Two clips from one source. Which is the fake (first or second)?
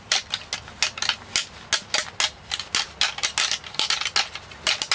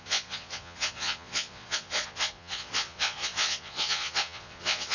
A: second